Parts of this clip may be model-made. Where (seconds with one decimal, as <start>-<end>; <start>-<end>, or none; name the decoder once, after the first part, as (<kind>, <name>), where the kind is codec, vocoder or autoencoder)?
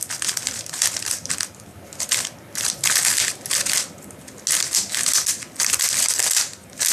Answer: none